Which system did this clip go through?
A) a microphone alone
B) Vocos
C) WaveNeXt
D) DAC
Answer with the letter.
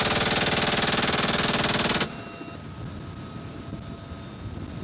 A